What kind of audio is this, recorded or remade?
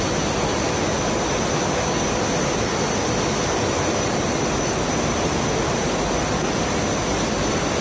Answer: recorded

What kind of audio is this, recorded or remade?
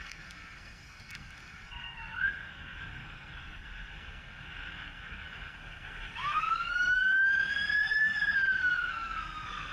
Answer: remade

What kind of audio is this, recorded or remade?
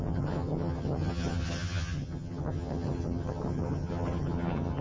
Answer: remade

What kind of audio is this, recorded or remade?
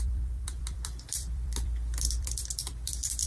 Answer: remade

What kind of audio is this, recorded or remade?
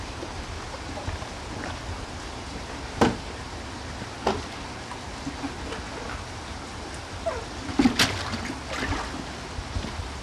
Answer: recorded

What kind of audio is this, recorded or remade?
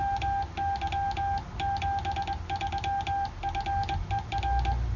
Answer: recorded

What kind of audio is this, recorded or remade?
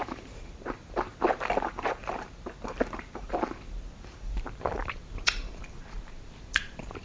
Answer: remade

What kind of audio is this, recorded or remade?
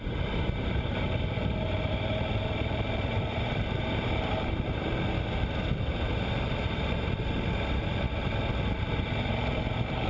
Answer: remade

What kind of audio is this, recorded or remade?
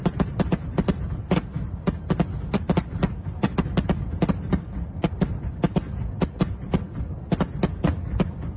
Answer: recorded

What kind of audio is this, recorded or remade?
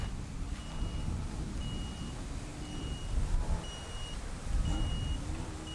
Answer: recorded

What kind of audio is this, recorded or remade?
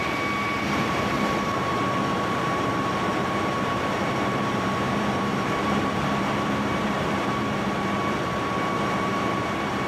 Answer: remade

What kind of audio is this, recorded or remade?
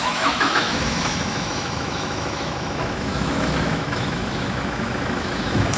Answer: remade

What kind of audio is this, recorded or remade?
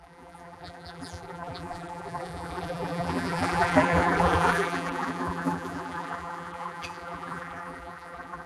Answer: remade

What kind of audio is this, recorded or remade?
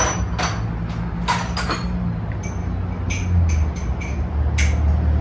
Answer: recorded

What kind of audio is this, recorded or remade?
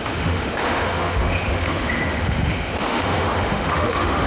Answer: remade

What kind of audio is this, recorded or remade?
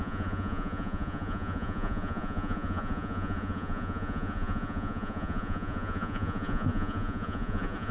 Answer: remade